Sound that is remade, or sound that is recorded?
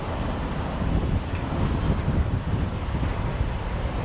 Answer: recorded